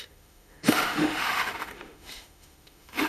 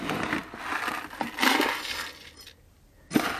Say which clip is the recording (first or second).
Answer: second